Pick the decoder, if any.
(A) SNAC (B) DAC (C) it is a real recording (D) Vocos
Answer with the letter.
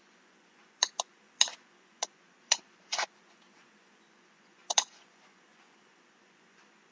D